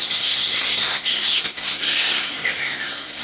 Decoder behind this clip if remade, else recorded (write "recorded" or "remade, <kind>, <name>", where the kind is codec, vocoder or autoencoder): remade, codec, SNAC